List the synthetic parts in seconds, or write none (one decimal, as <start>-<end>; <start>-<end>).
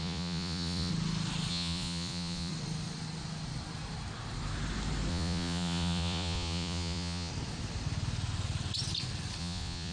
0.0-0.9; 1.5-2.5; 5.1-7.3; 9.4-9.9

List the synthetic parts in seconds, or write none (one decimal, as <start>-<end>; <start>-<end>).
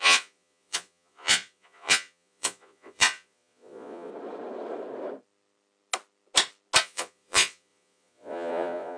0.0-4.1; 6.8-9.0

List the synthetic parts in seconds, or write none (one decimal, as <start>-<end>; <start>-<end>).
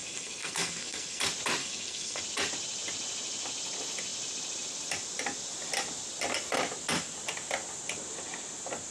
0.0-1.2; 1.6-2.2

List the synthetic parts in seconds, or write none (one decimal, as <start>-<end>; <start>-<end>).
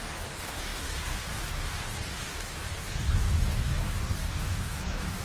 0.0-5.2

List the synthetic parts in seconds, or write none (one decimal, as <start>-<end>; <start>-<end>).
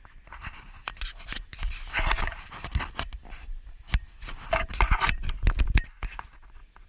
3.2-4.5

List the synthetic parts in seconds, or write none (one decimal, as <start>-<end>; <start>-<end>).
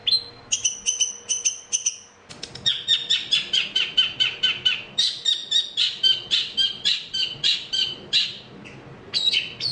none